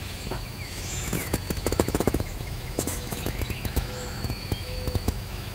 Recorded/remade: remade